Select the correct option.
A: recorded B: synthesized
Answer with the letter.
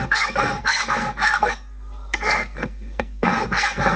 B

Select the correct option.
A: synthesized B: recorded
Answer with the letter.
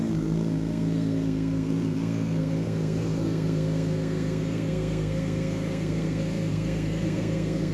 A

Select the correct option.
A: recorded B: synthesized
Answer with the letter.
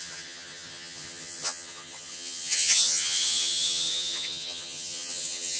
B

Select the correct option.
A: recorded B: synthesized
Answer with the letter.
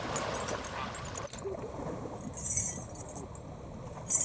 A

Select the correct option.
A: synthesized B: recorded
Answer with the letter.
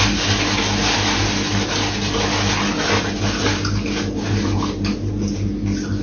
B